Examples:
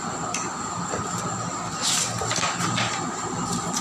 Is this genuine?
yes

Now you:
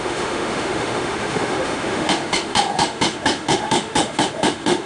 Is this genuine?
no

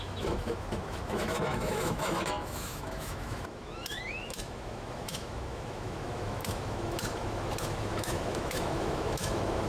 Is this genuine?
no